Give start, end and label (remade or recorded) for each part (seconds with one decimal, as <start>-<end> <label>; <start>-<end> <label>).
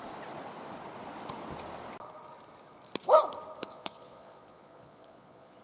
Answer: 0.0-3.6 recorded; 3.6-5.6 remade